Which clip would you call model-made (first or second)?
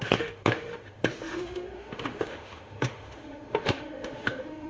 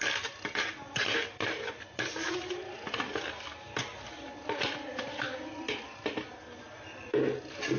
first